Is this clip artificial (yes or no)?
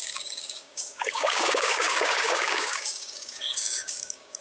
yes